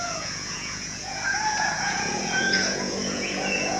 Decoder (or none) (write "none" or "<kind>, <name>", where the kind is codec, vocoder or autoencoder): vocoder, Vocos